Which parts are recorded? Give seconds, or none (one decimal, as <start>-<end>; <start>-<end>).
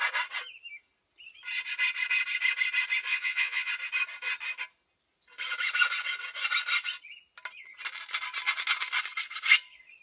0.0-3.1; 3.7-10.0